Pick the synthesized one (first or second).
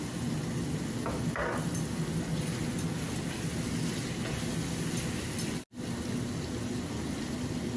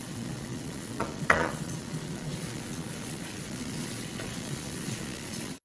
second